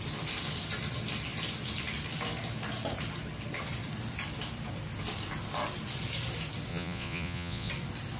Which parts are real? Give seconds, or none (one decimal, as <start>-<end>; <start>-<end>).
0.0-6.7; 7.7-8.2

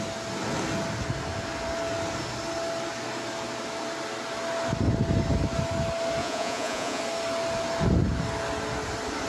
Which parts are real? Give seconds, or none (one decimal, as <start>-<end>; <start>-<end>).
0.0-6.2; 7.0-9.3

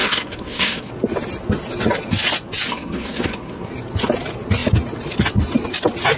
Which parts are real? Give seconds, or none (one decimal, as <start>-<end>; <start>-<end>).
0.9-2.7; 3.7-6.2

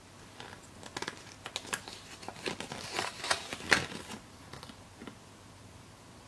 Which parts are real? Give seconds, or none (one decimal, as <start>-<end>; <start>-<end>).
0.0-6.3

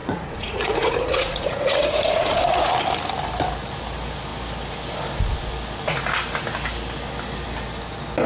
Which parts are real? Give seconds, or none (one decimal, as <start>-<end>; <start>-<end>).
2.7-8.3

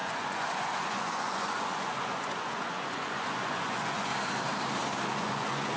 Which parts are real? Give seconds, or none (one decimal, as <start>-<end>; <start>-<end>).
4.1-5.1

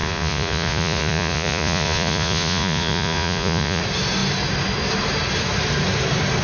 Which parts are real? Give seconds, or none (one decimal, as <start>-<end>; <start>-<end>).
3.8-6.4